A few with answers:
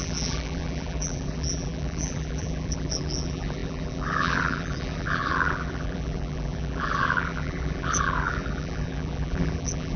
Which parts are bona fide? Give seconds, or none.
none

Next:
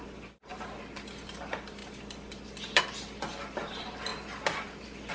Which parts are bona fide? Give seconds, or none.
0.5-1.4; 4.1-5.1

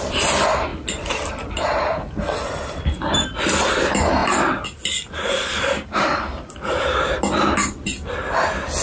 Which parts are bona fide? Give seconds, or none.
0.0-8.8

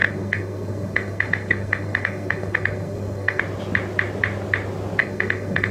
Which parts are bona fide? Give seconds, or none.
3.4-5.0

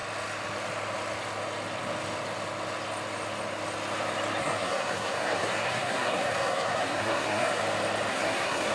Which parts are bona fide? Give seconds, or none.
0.0-4.4; 7.6-8.1

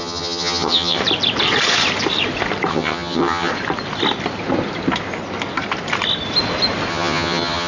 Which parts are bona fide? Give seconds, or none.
1.0-2.7; 3.5-6.9